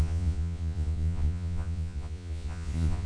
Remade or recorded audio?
remade